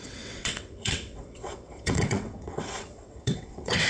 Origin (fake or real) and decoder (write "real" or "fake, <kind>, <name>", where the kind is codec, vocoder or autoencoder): fake, vocoder, WaveNeXt